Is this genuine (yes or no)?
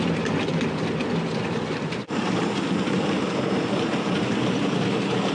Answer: no